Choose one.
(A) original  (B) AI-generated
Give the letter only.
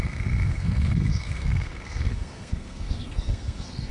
B